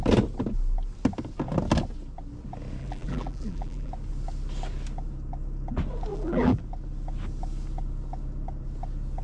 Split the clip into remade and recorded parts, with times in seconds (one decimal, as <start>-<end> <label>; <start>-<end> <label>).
0.0-2.8 recorded; 2.8-3.9 remade; 3.9-6.1 recorded; 6.1-6.6 remade; 6.6-9.2 recorded